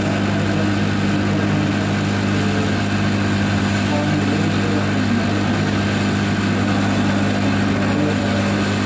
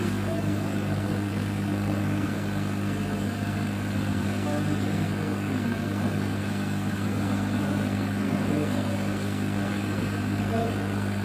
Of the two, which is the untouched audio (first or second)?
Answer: first